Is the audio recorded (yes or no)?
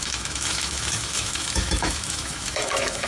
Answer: no